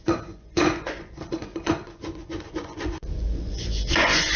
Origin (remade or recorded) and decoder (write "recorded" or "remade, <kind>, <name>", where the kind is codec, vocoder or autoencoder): remade, vocoder, Vocos